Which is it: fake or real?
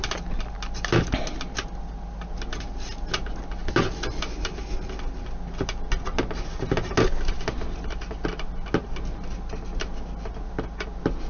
real